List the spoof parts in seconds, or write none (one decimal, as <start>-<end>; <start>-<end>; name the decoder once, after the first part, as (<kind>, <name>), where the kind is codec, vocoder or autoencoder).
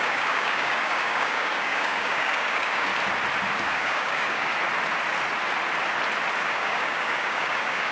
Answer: 0.0-2.9 (codec, DAC); 3.6-4.5; 6.4-7.9